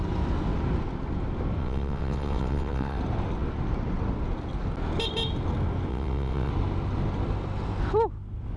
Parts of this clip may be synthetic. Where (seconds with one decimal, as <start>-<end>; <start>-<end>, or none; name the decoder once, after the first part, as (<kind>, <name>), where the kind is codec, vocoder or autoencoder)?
1.6-3.0 (vocoder, WaveNeXt); 5.9-6.5